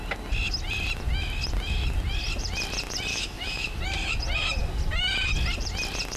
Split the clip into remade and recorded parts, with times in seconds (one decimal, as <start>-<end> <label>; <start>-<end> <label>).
0.0-3.1 recorded; 3.1-3.8 remade; 3.8-6.2 recorded